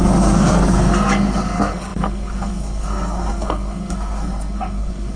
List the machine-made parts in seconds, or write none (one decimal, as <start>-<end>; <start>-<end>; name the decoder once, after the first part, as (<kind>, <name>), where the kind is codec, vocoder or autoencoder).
0.0-5.2 (codec, SNAC)